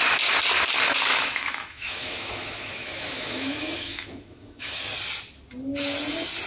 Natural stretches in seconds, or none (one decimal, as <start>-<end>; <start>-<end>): 0.0-1.1; 4.8-6.5